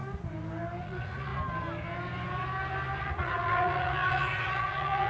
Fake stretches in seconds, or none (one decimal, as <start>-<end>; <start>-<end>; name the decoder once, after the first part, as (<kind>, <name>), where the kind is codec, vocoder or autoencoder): 0.8-1.3 (vocoder, Vocos); 3.0-5.1